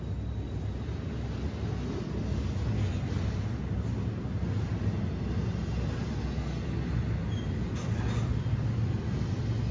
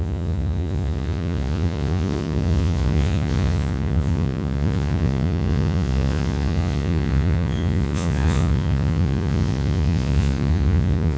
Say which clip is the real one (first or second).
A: first